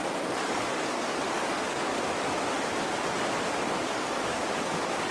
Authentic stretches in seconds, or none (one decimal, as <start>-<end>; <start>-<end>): 1.9-3.6